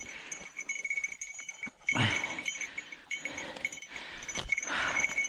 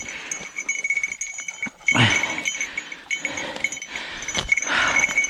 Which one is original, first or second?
second